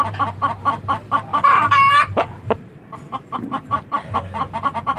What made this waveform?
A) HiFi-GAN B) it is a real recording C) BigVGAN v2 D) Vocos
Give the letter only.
C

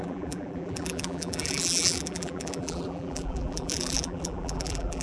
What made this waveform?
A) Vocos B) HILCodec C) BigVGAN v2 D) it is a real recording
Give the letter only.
C